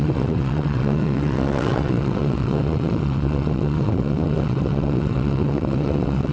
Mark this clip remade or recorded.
remade